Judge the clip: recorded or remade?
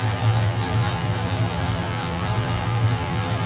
remade